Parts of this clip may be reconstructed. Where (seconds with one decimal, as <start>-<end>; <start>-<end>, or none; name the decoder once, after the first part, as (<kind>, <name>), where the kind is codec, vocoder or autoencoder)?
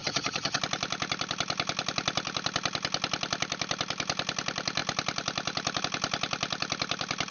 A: 0.0-0.6 (vocoder, HiFi-GAN)